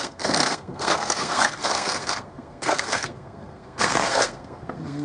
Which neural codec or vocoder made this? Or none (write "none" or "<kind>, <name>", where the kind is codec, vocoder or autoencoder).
codec, SNAC